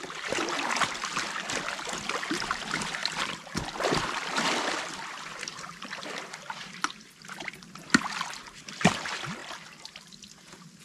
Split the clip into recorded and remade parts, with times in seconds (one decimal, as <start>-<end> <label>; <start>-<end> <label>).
0.0-3.0 recorded; 3.0-7.1 remade; 7.1-10.8 recorded